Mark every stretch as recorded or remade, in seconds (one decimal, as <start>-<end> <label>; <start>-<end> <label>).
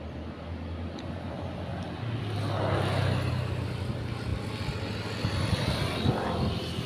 0.0-6.9 recorded